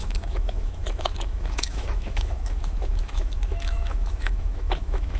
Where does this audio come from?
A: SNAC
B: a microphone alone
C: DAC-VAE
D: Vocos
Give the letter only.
C